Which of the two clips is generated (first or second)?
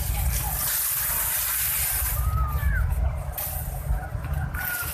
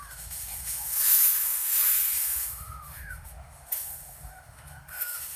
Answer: second